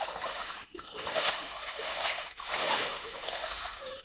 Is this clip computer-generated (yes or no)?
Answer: yes